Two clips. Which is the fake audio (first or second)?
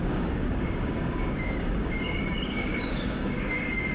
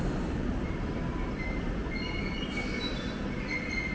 first